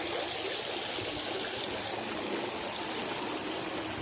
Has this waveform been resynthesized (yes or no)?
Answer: no